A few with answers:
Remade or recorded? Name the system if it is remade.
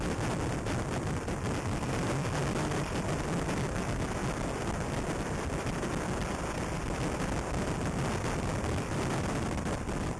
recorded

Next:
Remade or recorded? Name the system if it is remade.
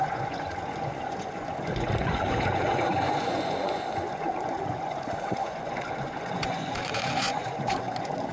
remade, vocoder, Vocos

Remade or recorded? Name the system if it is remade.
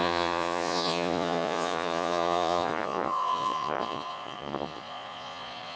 remade, vocoder, Vocos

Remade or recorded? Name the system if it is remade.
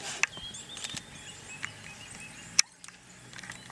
recorded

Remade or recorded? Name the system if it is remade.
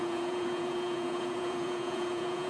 remade, vocoder, Vocos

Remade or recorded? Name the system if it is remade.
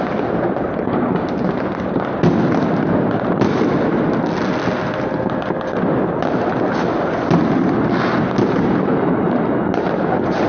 recorded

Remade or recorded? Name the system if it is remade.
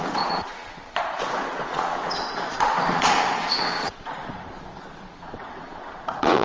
remade, vocoder, Vocos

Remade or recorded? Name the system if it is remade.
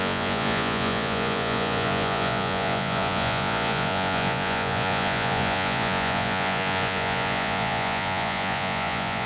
remade, vocoder, Vocos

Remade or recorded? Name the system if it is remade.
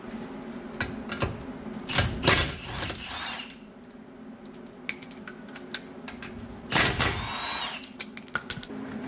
recorded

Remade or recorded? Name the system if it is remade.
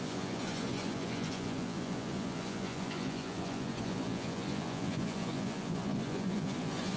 remade, vocoder, Vocos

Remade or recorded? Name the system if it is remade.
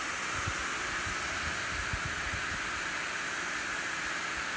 recorded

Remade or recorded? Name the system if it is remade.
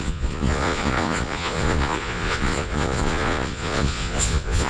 remade, vocoder, Vocos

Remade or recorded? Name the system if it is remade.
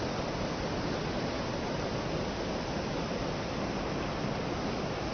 recorded